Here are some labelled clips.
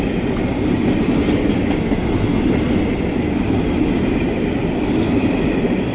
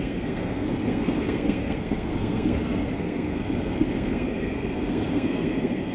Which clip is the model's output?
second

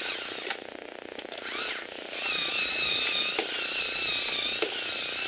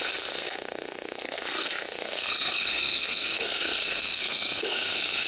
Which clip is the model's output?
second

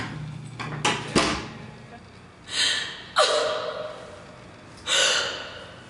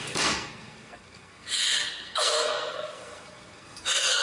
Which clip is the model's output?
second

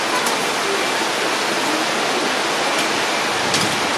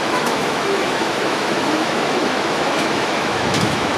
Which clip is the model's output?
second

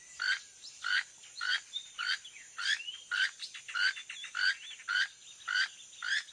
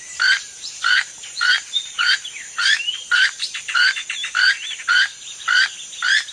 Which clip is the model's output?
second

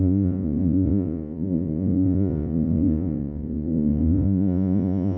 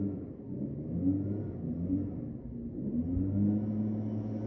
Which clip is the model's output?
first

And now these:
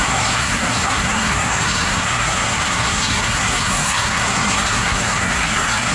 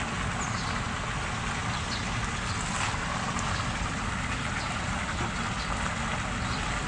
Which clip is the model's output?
first